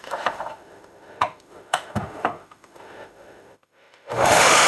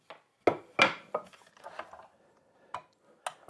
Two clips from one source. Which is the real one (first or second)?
second